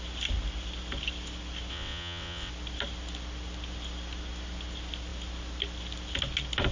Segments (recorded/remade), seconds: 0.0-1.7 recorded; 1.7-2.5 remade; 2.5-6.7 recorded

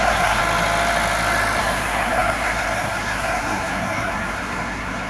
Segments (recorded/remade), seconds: 0.0-0.4 remade; 0.4-1.6 recorded; 1.6-5.1 remade

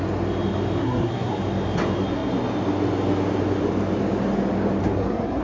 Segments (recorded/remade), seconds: 0.0-0.8 recorded; 0.8-1.4 remade; 1.4-4.8 recorded; 4.8-5.4 remade

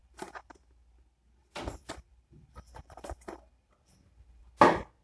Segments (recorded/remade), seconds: 0.0-0.5 remade; 0.5-1.4 recorded; 1.4-4.4 remade; 4.4-5.0 recorded

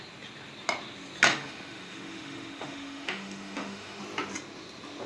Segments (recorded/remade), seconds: 0.0-1.3 recorded; 1.3-4.0 remade; 4.0-5.1 recorded

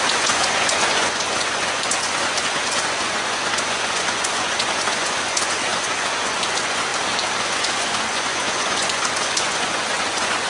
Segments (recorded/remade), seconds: 0.0-6.9 remade; 6.9-7.4 recorded; 7.4-10.5 remade

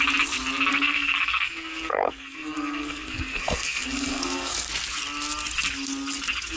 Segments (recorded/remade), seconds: 0.0-0.7 recorded; 0.7-4.7 remade; 4.7-6.6 recorded